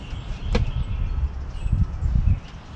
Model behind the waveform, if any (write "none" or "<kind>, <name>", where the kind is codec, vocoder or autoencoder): none